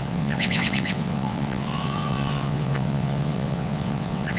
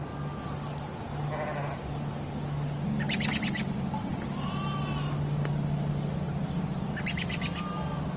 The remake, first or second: first